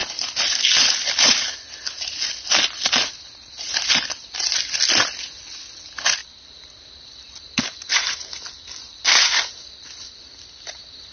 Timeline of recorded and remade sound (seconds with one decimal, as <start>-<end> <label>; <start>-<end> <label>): 0.0-2.0 remade; 2.0-6.2 recorded; 6.2-10.4 remade; 10.4-11.1 recorded